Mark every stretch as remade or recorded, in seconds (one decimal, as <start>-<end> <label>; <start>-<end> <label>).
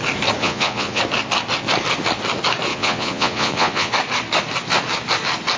0.0-0.4 recorded; 0.4-1.0 remade; 1.0-2.7 recorded; 2.7-3.9 remade; 3.9-5.6 recorded